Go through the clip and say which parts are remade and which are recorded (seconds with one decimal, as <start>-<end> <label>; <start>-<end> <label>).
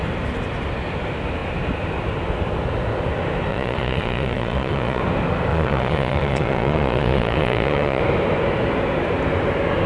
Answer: 0.0-3.5 recorded; 3.5-5.0 remade; 5.0-5.5 recorded; 5.5-8.0 remade; 8.0-9.9 recorded